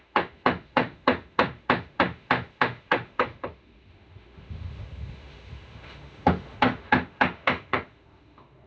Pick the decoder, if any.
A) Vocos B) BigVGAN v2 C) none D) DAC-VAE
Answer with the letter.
D